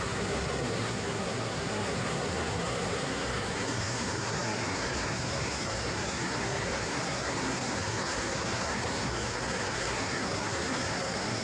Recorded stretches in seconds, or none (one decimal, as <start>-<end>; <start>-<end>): none